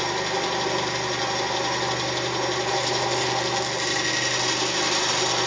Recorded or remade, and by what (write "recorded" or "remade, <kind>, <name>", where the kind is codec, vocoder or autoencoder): recorded